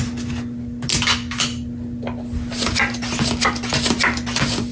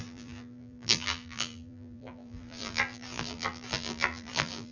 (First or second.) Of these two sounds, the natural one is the first